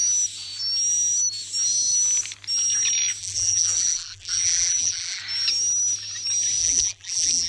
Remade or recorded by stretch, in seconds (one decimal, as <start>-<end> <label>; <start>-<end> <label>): 0.0-3.2 recorded; 3.2-5.2 remade; 5.2-6.6 recorded; 6.6-7.5 remade

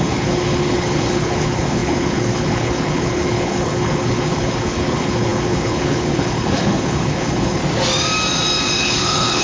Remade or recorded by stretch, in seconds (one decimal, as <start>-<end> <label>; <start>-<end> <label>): 0.0-7.6 remade; 7.6-8.8 recorded; 8.8-9.4 remade

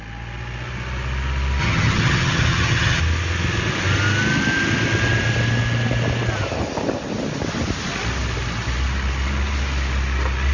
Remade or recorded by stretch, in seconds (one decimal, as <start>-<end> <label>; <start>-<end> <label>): 0.0-1.6 recorded; 1.6-3.0 remade; 3.0-10.5 recorded